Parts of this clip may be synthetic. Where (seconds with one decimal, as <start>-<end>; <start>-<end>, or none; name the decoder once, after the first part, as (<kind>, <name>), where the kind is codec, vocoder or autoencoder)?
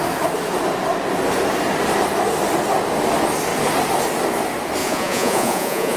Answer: 4.8-6.0 (vocoder, Vocos)